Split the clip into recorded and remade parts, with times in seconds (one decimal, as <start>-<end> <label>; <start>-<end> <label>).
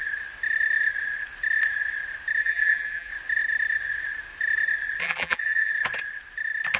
0.0-2.4 recorded; 2.4-3.1 remade; 3.1-5.0 recorded; 5.0-5.7 remade; 5.7-6.8 recorded